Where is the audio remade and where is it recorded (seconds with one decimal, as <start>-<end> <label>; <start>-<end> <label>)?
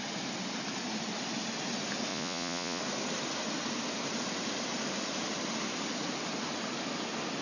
0.0-2.1 recorded; 2.1-2.8 remade; 2.8-7.4 recorded